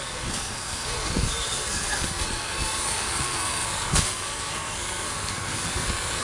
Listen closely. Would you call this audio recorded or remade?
remade